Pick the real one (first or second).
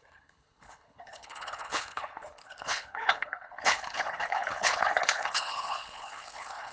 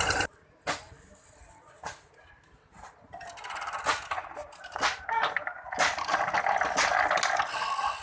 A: second